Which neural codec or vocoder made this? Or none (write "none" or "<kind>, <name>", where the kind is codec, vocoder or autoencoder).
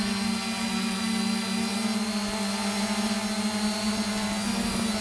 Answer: none